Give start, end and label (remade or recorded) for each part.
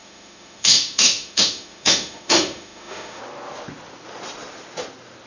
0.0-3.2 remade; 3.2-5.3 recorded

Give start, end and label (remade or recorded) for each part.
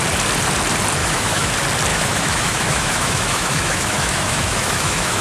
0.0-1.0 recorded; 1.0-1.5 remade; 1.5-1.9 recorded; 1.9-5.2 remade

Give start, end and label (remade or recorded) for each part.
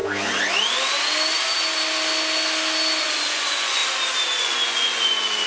0.0-3.0 recorded; 3.0-3.8 remade; 3.8-4.4 recorded; 4.4-5.5 remade